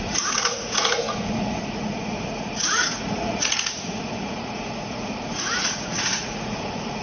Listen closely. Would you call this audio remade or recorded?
remade